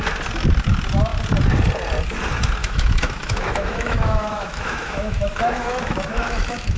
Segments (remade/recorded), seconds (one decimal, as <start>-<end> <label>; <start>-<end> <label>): 0.0-2.6 recorded; 2.6-6.8 remade

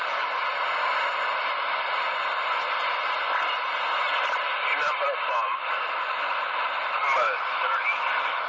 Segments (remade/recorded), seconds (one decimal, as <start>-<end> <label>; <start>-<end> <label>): 0.0-8.5 recorded

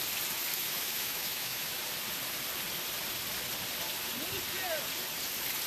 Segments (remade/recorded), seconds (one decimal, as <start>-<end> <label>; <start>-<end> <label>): 0.0-0.5 recorded; 0.5-1.8 remade; 1.8-5.7 recorded

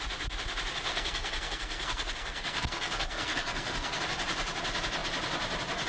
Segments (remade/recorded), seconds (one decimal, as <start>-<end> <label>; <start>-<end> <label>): 0.0-0.9 recorded; 0.9-4.0 remade; 4.0-5.9 recorded

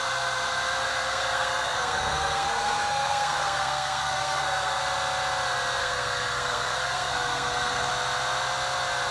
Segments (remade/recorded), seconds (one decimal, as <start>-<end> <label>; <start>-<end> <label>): 0.0-0.9 recorded; 0.9-4.8 remade; 4.8-5.8 recorded; 5.8-7.9 remade; 7.9-9.1 recorded